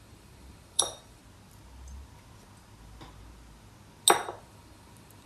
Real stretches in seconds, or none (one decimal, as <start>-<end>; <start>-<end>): 1.2-4.4